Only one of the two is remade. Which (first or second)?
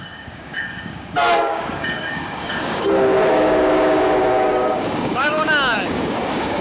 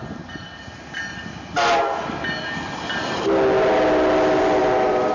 first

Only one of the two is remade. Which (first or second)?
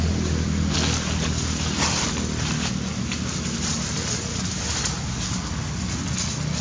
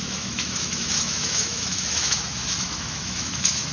second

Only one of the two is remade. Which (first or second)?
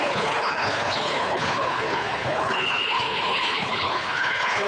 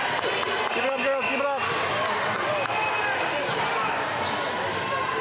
first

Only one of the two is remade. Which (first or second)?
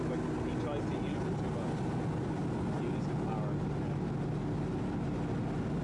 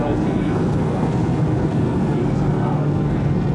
second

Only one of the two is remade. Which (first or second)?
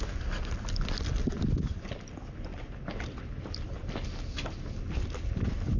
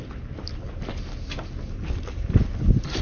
first